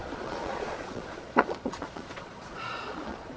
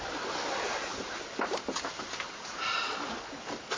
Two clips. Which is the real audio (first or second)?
second